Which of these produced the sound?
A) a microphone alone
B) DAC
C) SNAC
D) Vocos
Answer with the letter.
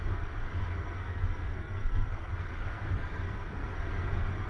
C